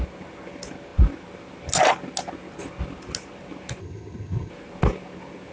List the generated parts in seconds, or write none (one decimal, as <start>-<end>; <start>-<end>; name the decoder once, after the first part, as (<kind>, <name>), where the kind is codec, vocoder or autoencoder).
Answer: 3.8-4.5 (vocoder, HiFi-GAN)